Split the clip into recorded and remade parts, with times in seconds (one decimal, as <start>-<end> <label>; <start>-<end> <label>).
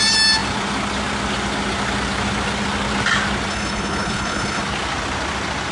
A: 0.0-3.5 recorded; 3.5-4.6 remade; 4.6-5.7 recorded